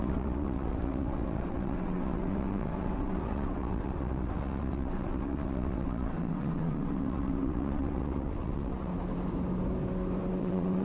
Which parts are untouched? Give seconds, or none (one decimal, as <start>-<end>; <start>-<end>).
8.9-10.4